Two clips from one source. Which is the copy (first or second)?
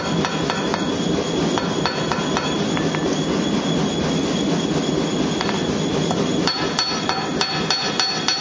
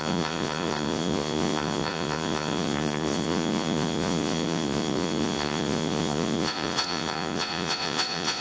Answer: second